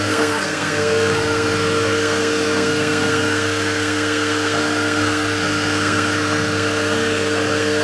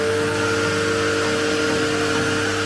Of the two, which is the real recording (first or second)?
second